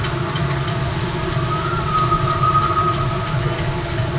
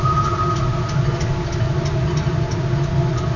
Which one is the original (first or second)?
second